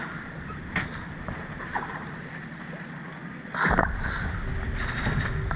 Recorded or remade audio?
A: recorded